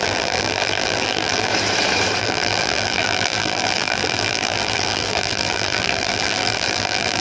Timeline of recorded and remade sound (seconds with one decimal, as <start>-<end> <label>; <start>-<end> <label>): 0.0-1.5 remade; 1.5-2.2 recorded; 2.2-7.2 remade